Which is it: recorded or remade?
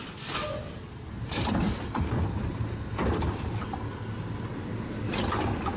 recorded